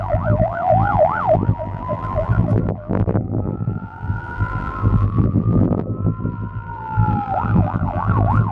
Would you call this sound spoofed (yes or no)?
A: yes